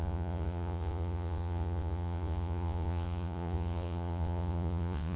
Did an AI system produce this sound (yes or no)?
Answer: yes